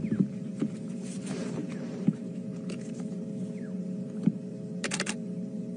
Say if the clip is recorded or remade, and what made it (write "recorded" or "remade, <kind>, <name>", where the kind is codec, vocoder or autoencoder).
remade, vocoder, BigVGAN v2